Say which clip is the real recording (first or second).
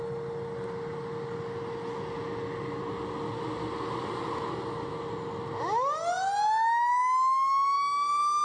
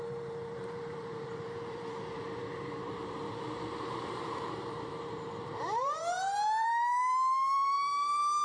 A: first